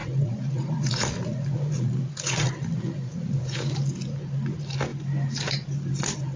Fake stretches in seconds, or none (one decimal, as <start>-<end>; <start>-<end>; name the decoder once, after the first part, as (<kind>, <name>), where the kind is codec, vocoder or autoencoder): 0.0-3.8 (vocoder, Vocos)